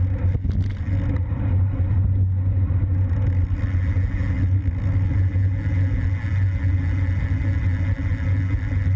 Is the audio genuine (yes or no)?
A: yes